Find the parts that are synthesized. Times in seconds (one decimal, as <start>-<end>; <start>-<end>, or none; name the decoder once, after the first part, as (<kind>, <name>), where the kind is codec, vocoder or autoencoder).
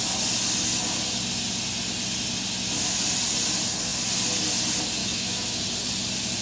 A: 5.0-5.6 (autoencoder, DAC-VAE)